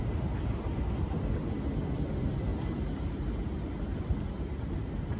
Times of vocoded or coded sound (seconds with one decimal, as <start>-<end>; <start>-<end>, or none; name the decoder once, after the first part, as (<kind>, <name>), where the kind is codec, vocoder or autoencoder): none